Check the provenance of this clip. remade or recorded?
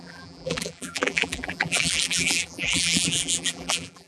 remade